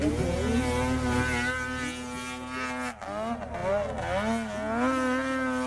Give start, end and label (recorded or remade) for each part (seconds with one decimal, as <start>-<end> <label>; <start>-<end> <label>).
0.0-5.7 recorded